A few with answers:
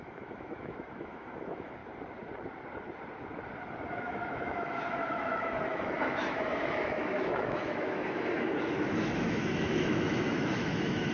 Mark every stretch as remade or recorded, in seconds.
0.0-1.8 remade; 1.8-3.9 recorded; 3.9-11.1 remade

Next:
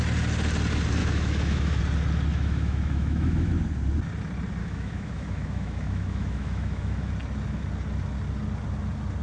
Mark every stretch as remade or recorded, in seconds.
0.0-1.0 recorded; 1.0-1.8 remade; 1.8-2.3 recorded; 2.3-3.5 remade; 3.5-4.6 recorded; 4.6-7.1 remade; 7.1-9.2 recorded

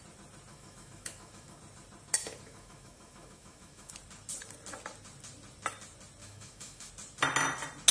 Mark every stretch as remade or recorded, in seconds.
0.0-0.5 recorded; 0.5-1.6 remade; 1.6-2.2 recorded; 2.2-3.9 remade; 3.9-6.2 recorded; 6.2-6.9 remade; 6.9-7.9 recorded

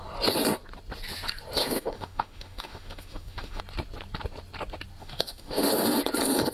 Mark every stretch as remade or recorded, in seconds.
0.0-1.6 recorded; 1.6-3.6 remade; 3.6-5.0 recorded; 5.0-5.7 remade; 5.7-6.5 recorded

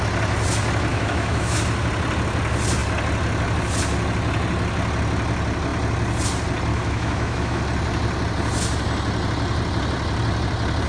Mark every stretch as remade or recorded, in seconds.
0.0-0.9 recorded; 0.9-1.6 remade; 1.6-6.7 recorded; 6.7-7.6 remade; 7.6-10.9 recorded

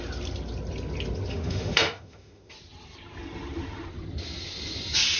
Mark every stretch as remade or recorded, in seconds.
0.0-1.3 recorded; 1.3-2.5 remade; 2.5-5.2 recorded

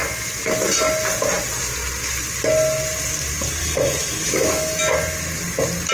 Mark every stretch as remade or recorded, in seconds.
0.0-3.6 recorded; 3.6-4.8 remade; 4.8-5.9 recorded